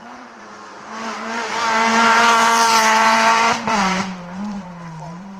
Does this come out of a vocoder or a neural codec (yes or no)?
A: yes